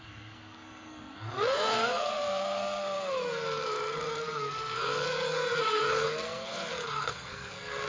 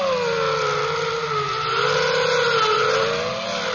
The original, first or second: second